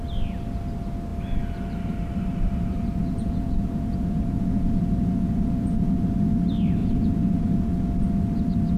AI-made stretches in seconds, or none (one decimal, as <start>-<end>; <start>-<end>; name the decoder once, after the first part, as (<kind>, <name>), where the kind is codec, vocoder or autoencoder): 3.0-6.1 (vocoder, Vocos); 6.8-7.9